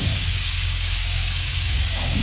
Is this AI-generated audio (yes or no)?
yes